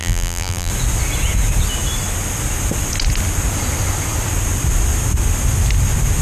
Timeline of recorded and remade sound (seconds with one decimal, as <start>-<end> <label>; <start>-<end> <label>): 0.0-0.7 remade; 0.7-6.2 recorded